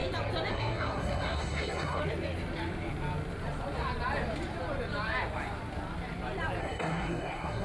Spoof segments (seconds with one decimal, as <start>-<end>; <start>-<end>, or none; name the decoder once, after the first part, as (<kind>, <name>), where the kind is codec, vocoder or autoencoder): 0.5-2.0 (codec, SNAC); 6.6-7.6